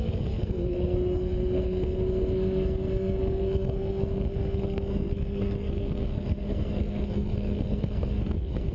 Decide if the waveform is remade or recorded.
remade